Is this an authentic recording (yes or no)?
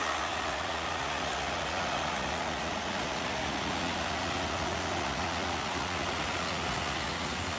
no